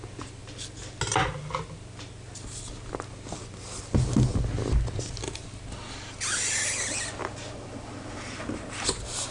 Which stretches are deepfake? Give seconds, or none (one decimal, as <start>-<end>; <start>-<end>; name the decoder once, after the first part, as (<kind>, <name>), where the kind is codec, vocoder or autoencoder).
none